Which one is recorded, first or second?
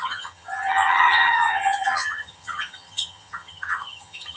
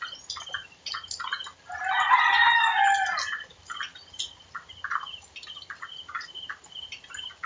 second